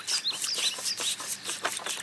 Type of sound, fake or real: real